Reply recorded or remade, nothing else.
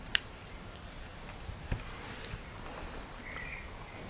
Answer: recorded